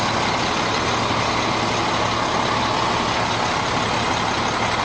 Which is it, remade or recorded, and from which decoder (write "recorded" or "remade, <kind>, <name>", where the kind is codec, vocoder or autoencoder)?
recorded